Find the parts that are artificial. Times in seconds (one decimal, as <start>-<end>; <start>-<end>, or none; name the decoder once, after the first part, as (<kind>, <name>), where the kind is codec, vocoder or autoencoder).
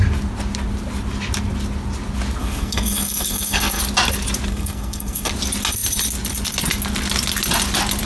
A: 2.4-3.8 (codec, SNAC); 4.5-5.3